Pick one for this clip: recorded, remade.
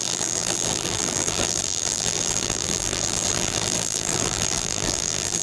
remade